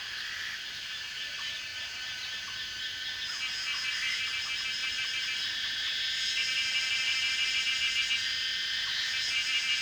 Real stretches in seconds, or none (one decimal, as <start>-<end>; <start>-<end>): 0.0-4.8; 7.6-9.8